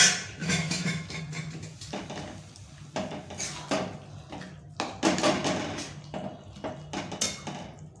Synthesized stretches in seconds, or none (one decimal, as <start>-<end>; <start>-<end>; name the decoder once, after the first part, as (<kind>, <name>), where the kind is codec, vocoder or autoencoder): 0.4-1.2 (autoencoder, DAC-VAE)